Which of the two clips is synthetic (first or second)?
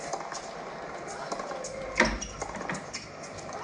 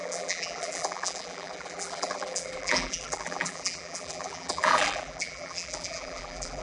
second